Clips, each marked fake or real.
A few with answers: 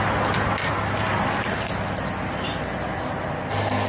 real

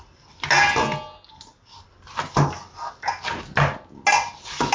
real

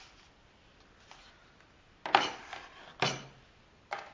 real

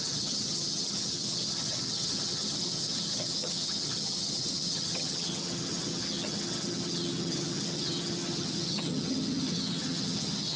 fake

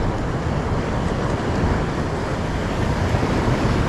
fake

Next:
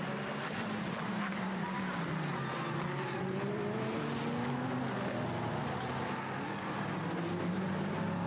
real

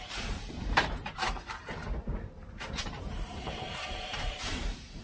fake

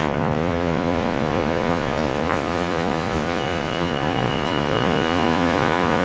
fake